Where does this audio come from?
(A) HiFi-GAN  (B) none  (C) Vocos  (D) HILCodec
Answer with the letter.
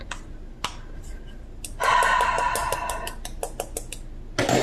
B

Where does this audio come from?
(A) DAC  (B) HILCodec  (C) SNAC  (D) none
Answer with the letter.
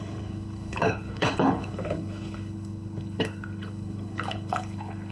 B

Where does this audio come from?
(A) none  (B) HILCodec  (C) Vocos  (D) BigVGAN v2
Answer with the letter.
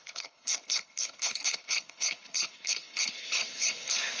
B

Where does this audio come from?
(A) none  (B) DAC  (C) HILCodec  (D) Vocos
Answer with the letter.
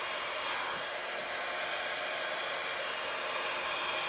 A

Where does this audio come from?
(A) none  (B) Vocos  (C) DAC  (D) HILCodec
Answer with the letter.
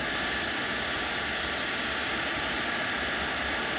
A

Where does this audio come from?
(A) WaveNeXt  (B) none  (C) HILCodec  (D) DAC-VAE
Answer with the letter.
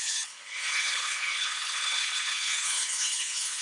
C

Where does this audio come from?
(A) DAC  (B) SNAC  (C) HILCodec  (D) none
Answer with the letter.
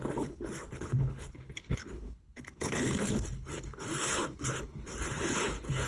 C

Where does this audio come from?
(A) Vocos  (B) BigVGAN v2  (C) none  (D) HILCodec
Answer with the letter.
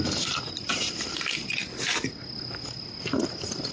C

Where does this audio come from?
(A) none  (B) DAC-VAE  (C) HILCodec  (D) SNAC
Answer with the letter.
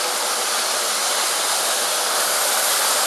A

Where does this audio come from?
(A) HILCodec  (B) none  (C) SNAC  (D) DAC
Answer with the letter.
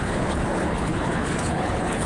A